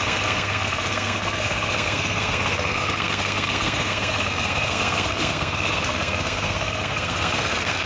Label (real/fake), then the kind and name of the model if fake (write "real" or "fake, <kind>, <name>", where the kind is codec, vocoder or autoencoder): fake, codec, SNAC